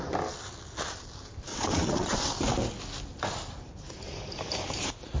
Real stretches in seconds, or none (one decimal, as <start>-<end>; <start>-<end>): 0.0-1.5; 2.3-5.2